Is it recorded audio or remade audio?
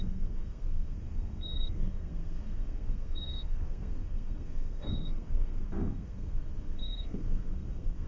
remade